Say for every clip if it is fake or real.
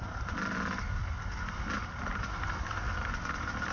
real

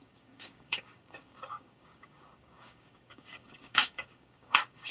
fake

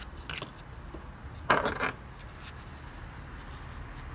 real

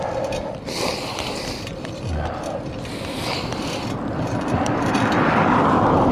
real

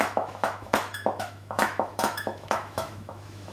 fake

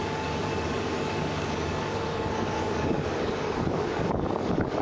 fake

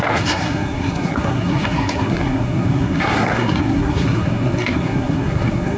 fake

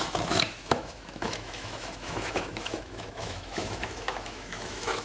fake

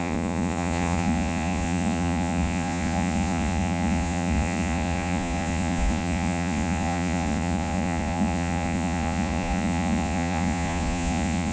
fake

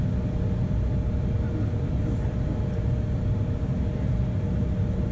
real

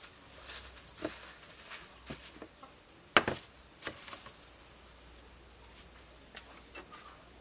real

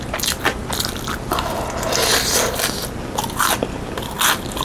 real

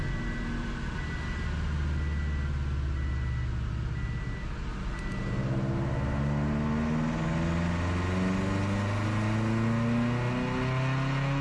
real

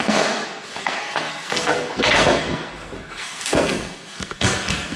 fake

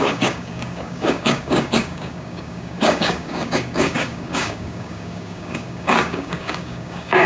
fake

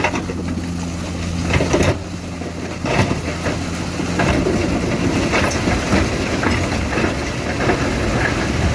real